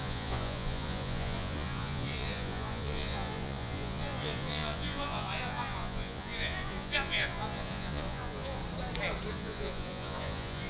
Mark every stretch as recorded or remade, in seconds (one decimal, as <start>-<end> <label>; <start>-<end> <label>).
0.0-8.6 remade; 8.6-9.3 recorded; 9.3-10.7 remade